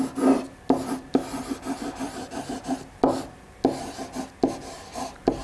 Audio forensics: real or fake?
real